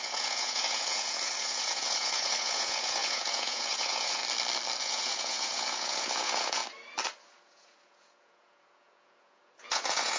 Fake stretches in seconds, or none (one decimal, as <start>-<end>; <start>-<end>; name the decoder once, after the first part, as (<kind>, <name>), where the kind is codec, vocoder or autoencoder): 0.0-4.2 (vocoder, Vocos); 4.8-6.6; 7.2-10.2

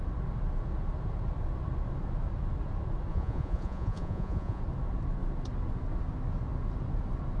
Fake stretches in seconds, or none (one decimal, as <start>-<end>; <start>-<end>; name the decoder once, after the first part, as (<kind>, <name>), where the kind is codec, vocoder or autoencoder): 3.1-4.6 (vocoder, Vocos)

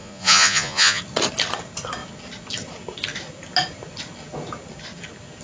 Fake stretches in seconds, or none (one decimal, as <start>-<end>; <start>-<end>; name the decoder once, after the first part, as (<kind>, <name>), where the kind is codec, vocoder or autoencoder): 0.0-1.0 (vocoder, Vocos)

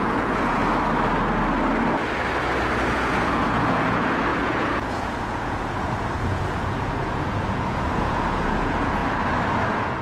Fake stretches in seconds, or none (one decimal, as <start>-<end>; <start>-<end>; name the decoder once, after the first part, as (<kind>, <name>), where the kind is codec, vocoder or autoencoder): 0.0-0.6 (vocoder, Vocos); 2.9-9.0; 9.5-10.0

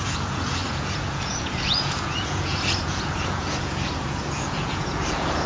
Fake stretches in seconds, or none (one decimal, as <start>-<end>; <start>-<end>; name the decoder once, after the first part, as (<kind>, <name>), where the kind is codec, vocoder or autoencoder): 0.0-5.5 (vocoder, Vocos)

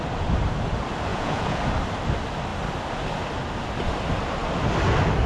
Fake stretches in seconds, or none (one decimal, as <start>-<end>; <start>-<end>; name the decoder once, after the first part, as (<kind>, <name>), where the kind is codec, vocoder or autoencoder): 1.1-1.6 (vocoder, Vocos)

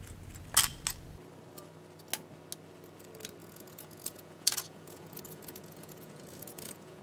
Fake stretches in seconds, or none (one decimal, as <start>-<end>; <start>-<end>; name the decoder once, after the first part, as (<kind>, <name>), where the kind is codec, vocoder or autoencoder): 3.4-7.0 (vocoder, Vocos)